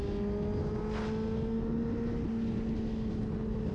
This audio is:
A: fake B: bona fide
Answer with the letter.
B